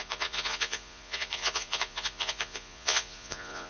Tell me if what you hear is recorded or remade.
remade